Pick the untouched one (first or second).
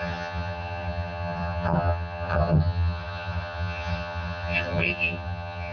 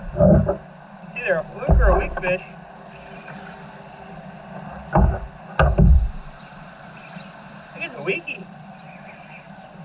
second